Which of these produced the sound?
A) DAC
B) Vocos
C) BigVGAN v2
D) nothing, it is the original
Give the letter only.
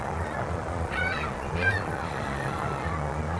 B